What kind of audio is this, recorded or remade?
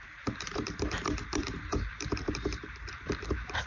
remade